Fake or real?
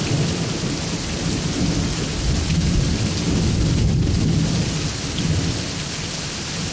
real